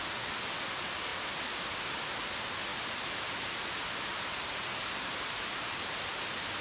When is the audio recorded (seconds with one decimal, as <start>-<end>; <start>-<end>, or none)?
0.0-2.7; 3.4-6.6